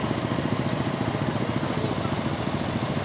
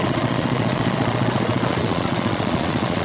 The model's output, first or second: second